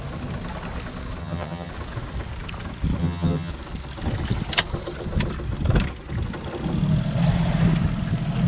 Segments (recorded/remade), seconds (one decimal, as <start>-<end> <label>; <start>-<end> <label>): 0.0-1.2 recorded; 1.2-1.7 remade; 1.7-3.0 recorded; 3.0-3.5 remade; 3.5-8.5 recorded